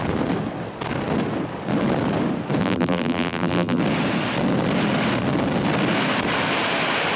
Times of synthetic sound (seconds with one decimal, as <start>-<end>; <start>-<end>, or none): 2.6-3.8